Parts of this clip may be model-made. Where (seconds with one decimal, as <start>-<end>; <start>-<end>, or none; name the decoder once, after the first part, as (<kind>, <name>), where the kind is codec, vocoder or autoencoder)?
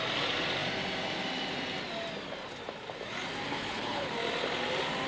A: 3.5-4.1 (codec, HILCodec)